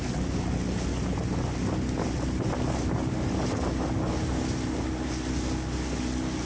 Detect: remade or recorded recorded